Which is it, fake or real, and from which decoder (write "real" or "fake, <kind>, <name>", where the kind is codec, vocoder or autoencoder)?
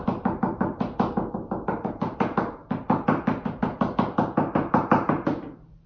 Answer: real